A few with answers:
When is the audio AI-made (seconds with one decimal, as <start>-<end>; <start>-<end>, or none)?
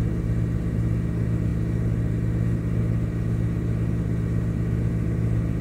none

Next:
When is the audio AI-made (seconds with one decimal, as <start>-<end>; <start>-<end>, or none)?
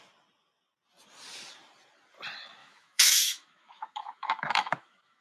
2.6-5.2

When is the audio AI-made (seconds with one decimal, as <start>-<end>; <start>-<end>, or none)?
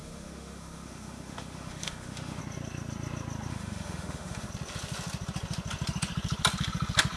0.0-2.4; 3.5-4.5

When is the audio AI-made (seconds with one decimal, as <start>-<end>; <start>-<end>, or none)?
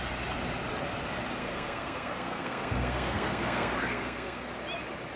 1.4-4.5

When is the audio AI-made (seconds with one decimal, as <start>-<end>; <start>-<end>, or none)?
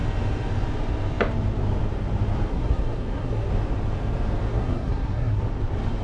2.5-3.5; 4.5-5.4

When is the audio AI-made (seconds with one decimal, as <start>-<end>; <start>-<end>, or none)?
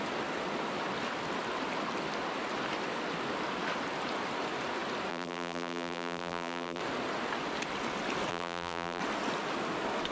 5.1-6.8; 8.3-9.0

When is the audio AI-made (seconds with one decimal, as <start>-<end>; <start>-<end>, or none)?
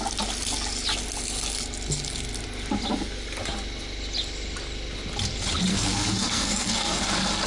5.7-7.0